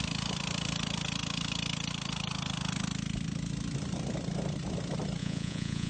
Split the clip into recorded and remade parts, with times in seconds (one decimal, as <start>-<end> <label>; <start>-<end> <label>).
0.0-5.2 recorded; 5.2-5.9 remade